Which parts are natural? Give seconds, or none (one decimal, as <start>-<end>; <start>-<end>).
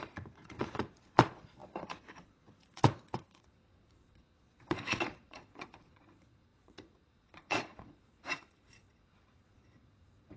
none